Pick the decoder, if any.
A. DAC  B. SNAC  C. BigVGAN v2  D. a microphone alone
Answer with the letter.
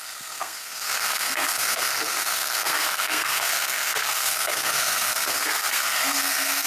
B